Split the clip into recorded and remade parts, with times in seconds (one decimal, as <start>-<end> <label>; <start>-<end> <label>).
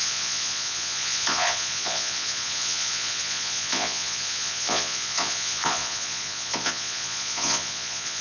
0.0-8.2 remade